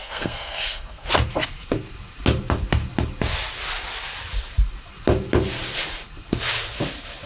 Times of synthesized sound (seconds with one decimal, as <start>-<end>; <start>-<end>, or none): 0.0-1.1

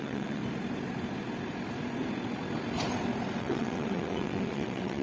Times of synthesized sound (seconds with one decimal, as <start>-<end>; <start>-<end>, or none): 0.0-0.4; 3.4-5.0